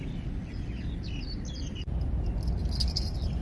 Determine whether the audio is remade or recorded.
recorded